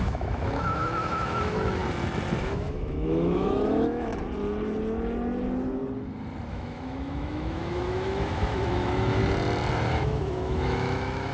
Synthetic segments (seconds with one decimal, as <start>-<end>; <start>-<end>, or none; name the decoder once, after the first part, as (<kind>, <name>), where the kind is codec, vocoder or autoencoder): 0.0-1.8 (autoencoder, DAC-VAE); 2.4-4.1; 6.5-9.2; 9.9-11.3